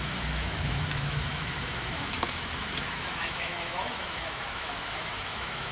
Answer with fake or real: fake